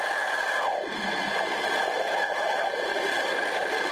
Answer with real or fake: real